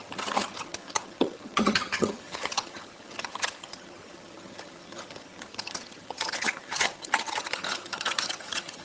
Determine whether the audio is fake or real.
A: fake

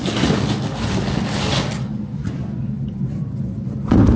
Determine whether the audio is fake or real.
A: real